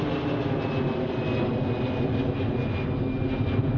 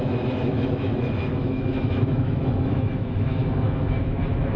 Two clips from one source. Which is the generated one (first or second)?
second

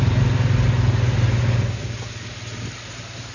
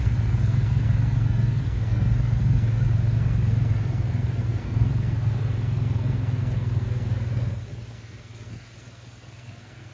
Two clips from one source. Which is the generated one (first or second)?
second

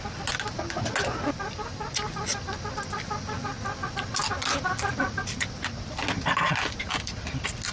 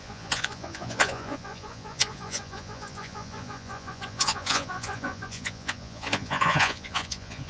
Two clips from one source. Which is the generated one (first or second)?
second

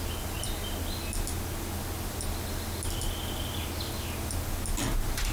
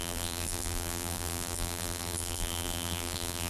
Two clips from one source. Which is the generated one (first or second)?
second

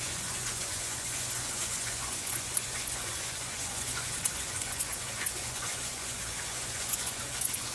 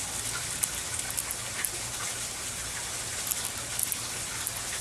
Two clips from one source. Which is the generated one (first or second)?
first